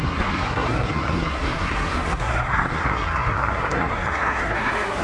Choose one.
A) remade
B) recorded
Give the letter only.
A